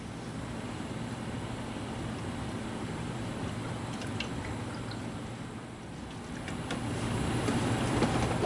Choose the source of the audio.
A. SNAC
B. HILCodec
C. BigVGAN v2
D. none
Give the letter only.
C